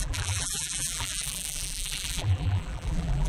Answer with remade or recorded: remade